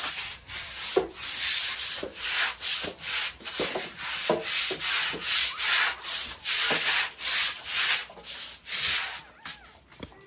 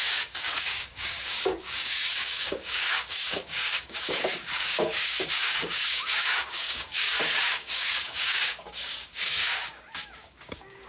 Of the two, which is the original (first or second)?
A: first